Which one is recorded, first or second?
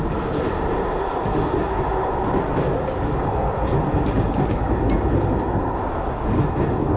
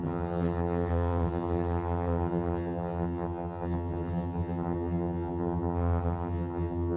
first